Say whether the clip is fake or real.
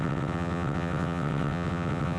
fake